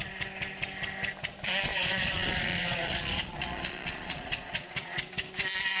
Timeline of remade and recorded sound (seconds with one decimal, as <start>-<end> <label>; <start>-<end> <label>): 0.0-1.7 recorded; 1.7-5.0 remade; 5.0-5.8 recorded